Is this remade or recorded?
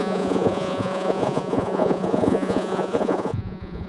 remade